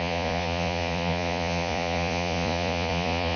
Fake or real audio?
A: fake